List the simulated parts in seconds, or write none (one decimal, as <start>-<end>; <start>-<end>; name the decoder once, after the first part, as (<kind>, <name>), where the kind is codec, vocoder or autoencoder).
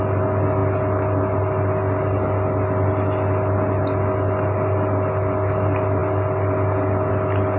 none